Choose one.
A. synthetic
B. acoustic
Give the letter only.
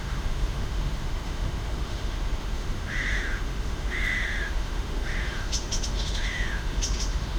A